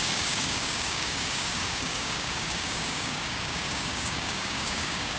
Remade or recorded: remade